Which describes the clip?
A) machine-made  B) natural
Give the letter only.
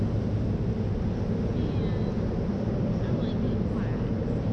B